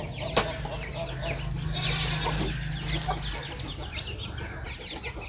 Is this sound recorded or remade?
recorded